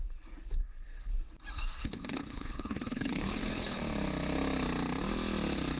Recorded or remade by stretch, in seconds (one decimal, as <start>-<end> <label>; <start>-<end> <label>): 0.0-0.6 recorded; 0.6-1.1 remade; 1.1-1.8 recorded; 1.8-3.8 remade; 3.8-5.8 recorded